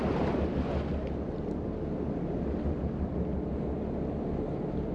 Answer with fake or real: real